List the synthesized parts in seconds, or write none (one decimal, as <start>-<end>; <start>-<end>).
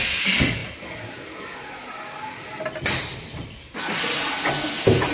3.1-4.5